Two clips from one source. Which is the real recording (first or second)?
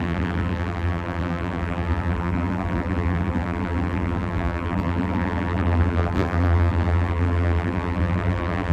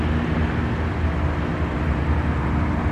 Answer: second